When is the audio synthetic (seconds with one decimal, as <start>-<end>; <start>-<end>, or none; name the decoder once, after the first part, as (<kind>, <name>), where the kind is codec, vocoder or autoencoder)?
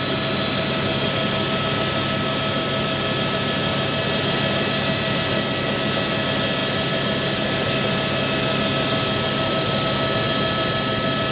none